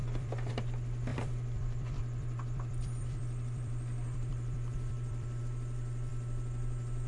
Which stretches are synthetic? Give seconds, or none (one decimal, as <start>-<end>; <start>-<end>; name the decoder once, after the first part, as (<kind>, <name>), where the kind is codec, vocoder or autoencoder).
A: 0.0-0.5 (vocoder, BigVGAN v2); 1.1-5.4

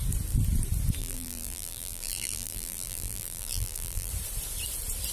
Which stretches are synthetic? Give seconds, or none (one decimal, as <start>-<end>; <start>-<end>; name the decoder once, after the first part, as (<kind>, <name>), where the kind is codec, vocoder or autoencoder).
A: 1.0-4.1 (vocoder, BigVGAN v2)

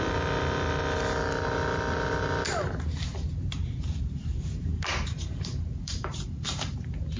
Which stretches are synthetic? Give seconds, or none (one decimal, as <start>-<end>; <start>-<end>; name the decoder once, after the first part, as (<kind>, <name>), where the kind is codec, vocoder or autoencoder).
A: 3.6-6.6 (vocoder, BigVGAN v2)

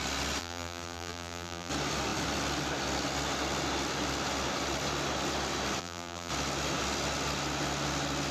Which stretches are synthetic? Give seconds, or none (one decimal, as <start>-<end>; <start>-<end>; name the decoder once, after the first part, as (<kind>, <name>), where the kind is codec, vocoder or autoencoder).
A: 0.4-1.7 (vocoder, BigVGAN v2); 5.8-6.3

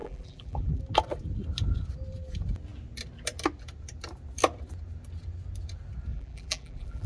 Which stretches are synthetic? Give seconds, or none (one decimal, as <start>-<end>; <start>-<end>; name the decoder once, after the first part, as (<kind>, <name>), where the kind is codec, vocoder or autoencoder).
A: 0.0-0.8 (vocoder, BigVGAN v2); 6.1-7.1

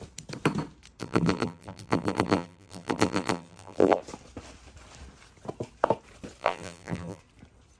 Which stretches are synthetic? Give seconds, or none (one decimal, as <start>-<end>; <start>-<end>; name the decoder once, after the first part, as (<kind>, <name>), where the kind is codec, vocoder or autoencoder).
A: 1.0-4.0 (vocoder, BigVGAN v2); 6.4-7.2

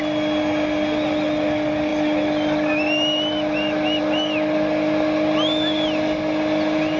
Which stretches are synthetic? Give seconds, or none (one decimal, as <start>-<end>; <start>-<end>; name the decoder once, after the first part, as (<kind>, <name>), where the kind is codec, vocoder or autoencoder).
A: none

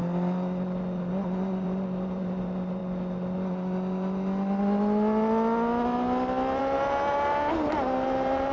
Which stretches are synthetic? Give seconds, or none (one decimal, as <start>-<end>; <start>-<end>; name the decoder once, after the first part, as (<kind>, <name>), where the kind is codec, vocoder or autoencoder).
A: 1.1-2.8 (vocoder, BigVGAN v2); 6.6-8.5